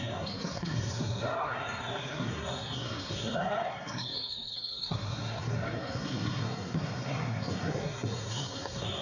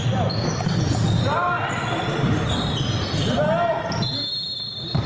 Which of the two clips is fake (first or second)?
first